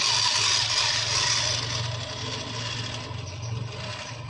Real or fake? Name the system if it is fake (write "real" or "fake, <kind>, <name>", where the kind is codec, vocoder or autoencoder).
real